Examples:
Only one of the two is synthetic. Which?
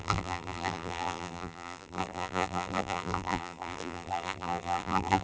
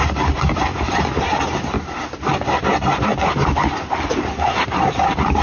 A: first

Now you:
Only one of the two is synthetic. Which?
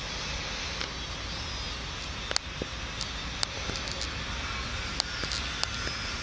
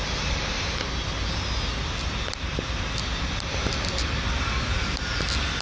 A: second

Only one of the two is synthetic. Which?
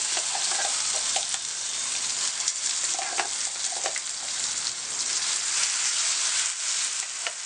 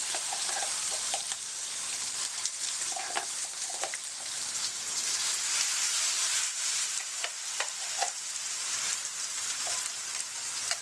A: second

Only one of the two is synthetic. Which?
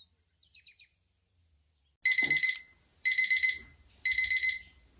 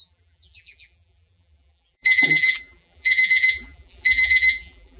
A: second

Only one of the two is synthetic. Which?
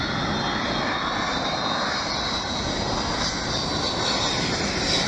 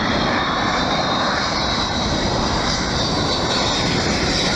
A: second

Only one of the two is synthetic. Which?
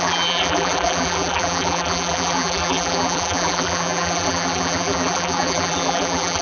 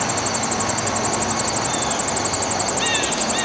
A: first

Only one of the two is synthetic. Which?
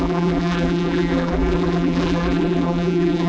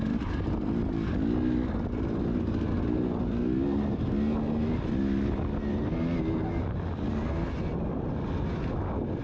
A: first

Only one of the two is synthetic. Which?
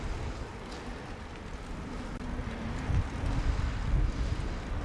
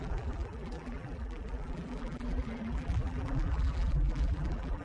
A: second